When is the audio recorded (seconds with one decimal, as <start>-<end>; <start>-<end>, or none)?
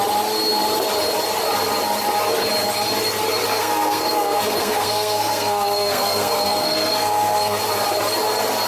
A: 0.0-3.5; 7.6-8.7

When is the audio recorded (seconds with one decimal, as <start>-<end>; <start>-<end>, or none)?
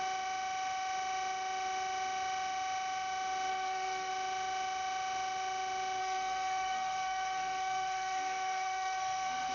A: 0.0-3.5; 4.1-6.0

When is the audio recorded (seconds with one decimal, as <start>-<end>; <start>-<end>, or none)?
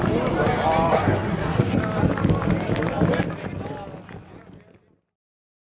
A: 0.0-0.9; 1.8-5.7